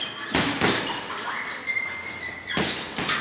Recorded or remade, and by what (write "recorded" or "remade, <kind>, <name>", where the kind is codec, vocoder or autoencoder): recorded